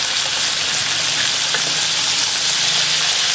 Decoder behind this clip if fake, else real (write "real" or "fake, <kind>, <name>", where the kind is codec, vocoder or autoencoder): real